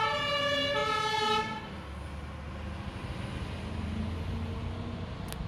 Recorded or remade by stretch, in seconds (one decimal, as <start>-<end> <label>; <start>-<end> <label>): 0.0-0.8 recorded; 0.8-1.6 remade; 1.6-5.5 recorded